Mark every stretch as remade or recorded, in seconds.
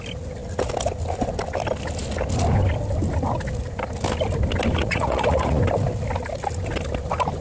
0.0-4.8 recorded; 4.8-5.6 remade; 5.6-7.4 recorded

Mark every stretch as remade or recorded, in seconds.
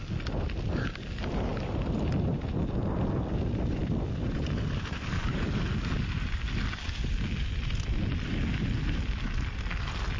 0.0-10.2 recorded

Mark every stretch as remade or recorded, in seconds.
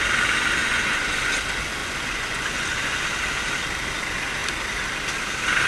0.0-0.6 recorded; 0.6-1.3 remade; 1.3-1.8 recorded; 1.8-3.0 remade; 3.0-5.7 recorded